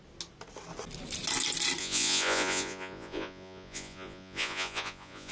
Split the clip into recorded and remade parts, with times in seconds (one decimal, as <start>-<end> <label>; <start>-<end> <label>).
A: 0.0-1.8 recorded; 1.8-5.3 remade